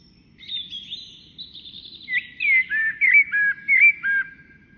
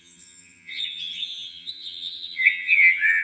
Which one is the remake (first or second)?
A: second